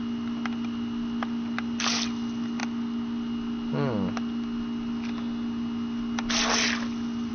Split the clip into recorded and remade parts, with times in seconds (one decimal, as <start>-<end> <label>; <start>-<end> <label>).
0.0-7.3 recorded